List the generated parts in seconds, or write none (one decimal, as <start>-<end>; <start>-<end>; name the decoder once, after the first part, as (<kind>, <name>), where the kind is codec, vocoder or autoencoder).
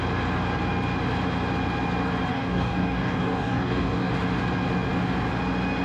2.3-4.1 (codec, DAC)